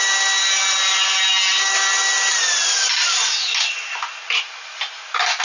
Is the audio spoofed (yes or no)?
no